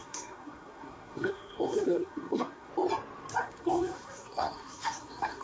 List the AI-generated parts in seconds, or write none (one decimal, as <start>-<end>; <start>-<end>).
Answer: 0.0-2.7; 3.4-5.4